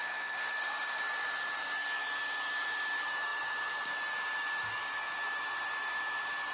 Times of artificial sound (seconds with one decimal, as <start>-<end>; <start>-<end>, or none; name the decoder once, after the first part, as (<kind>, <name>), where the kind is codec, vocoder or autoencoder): 0.0-1.0 (autoencoder, DAC-VAE)